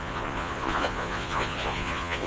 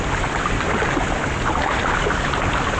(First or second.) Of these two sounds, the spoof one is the first